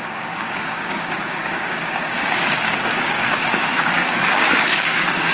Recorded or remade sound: remade